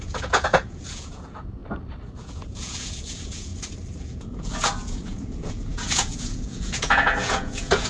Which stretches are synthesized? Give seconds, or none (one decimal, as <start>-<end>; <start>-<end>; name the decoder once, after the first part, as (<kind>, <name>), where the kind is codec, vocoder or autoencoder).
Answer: 0.0-1.6 (vocoder, Vocos); 2.2-3.5; 4.0-7.9